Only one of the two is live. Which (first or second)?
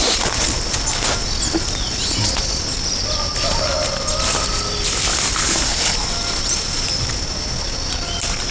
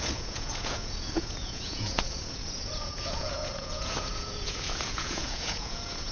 first